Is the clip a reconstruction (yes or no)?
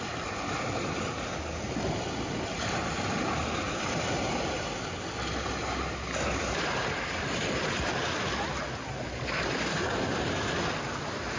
no